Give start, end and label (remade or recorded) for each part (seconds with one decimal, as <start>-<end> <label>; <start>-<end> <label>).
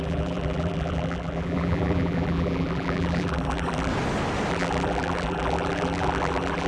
0.0-3.9 remade; 3.9-4.5 recorded; 4.5-6.7 remade